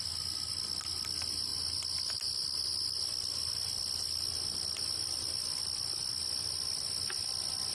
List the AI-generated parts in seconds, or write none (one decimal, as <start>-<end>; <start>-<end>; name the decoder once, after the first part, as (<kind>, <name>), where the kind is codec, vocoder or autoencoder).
none